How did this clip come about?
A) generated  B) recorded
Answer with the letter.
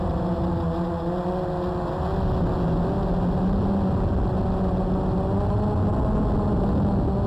B